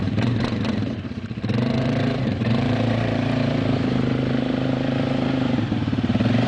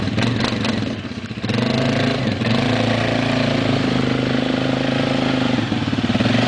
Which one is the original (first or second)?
second